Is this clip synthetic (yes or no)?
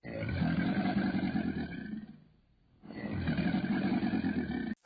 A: no